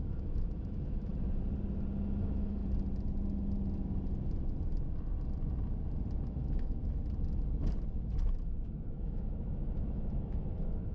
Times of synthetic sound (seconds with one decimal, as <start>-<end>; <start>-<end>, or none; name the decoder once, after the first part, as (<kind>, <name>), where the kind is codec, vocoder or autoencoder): 0.0-1.1 (autoencoder, DAC-VAE); 2.2-2.6; 6.2-6.8; 8.4-10.9